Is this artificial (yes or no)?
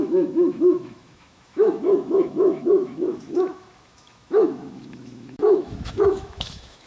yes